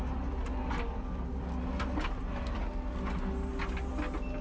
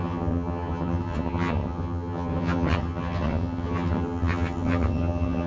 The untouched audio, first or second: first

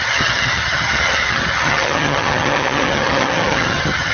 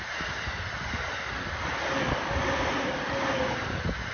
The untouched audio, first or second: second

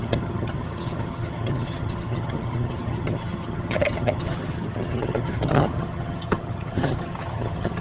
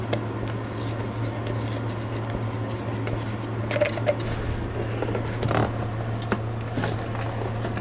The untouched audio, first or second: second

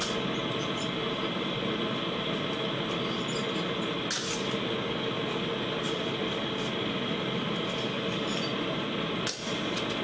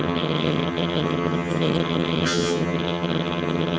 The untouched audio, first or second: first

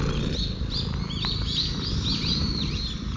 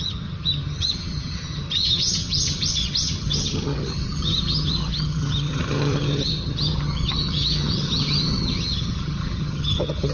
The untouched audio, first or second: first